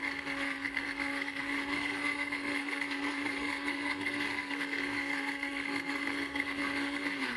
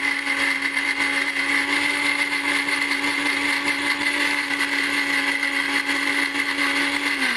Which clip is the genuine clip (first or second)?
second